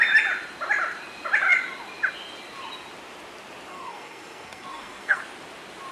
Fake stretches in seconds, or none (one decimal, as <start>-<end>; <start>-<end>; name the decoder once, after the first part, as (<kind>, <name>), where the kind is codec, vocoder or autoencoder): 3.7-5.2 (codec, SNAC)